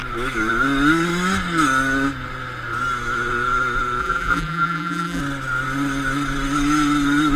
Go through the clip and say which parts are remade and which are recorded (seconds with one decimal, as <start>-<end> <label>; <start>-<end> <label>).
0.0-4.0 recorded; 4.0-5.2 remade; 5.2-7.4 recorded